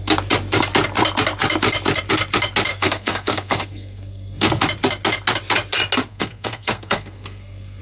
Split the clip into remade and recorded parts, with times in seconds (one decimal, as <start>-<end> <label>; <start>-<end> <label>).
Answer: 0.0-2.7 recorded; 2.7-4.5 remade; 4.5-6.1 recorded; 6.1-7.8 remade